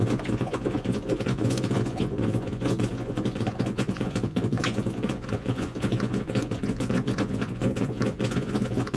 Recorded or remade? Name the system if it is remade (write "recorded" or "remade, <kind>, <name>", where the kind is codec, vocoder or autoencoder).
remade, vocoder, Vocos